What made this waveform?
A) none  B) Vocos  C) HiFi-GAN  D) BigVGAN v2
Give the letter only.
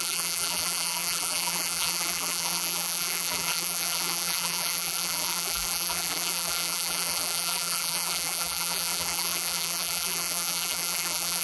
D